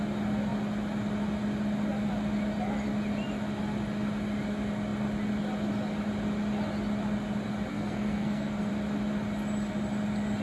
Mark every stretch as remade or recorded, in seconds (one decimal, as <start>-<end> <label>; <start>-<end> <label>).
0.0-7.7 recorded; 7.7-8.7 remade; 8.7-10.4 recorded